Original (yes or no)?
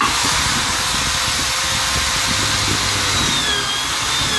yes